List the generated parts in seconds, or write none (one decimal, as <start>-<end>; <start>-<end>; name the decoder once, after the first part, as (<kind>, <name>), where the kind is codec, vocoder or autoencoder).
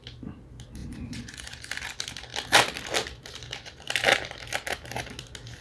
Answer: 0.8-1.7 (vocoder, Vocos)